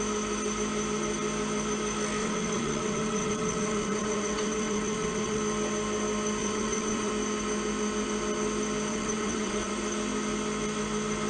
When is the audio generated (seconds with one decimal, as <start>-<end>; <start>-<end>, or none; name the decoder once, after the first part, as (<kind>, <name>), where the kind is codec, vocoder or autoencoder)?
2.2-5.4 (vocoder, WaveNeXt); 6.4-7.1; 8.9-9.7